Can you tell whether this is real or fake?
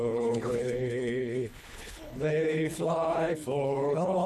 fake